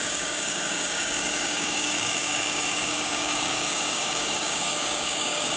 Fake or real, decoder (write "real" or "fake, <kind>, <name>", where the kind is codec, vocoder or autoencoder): fake, codec, DAC